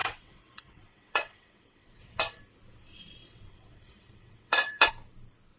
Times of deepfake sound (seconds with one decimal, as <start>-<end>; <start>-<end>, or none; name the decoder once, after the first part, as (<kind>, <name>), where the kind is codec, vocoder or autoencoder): 0.0-2.4 (vocoder, WaveNeXt); 3.2-4.9